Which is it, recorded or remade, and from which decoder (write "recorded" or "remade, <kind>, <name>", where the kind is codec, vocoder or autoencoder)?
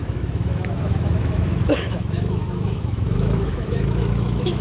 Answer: remade, autoencoder, DAC-VAE